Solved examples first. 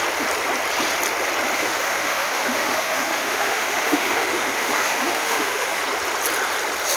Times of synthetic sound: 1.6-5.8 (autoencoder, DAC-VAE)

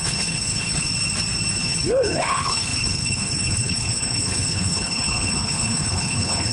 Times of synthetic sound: 0.0-0.9 (codec, HILCodec); 1.6-6.5

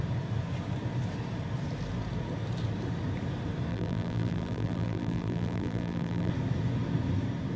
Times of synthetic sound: 3.7-6.3 (vocoder, BigVGAN v2)

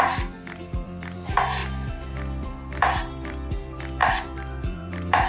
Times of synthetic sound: 0.0-5.3 (vocoder, BigVGAN v2)

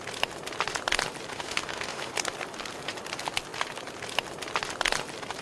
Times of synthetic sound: 1.3-2.1 (autoencoder, DAC-VAE)

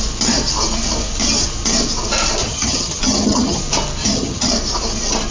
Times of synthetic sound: 2.4-3.6 (vocoder, HiFi-GAN); 4.0-4.5